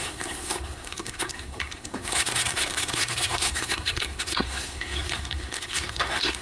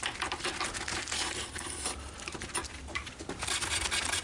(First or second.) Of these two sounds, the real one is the second